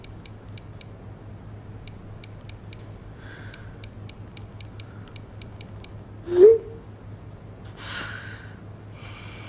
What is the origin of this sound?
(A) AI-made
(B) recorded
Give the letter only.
B